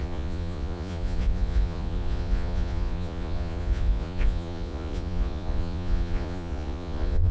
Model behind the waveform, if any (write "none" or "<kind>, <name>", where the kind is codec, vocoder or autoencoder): vocoder, Vocos